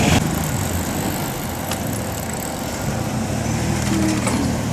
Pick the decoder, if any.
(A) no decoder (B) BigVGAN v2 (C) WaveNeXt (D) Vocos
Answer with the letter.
A